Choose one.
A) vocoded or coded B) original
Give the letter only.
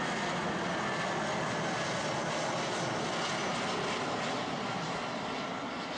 B